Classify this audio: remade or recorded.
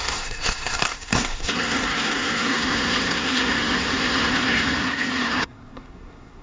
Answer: remade